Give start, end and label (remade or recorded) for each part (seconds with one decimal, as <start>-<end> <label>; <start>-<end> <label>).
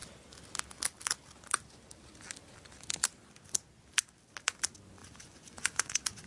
0.0-5.0 recorded; 5.0-6.3 remade